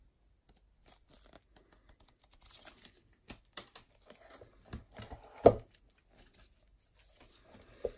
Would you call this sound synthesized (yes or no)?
no